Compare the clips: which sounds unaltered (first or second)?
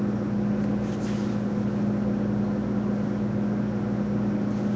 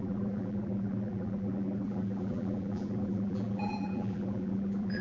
first